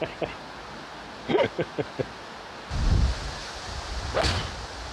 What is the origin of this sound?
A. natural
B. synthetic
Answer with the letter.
A